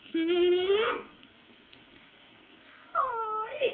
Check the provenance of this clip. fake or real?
fake